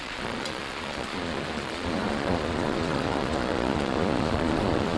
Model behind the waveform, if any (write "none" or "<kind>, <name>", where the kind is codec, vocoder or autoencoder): vocoder, Vocos